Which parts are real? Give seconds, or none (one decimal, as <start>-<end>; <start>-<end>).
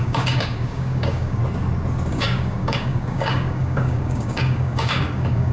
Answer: 1.4-2.1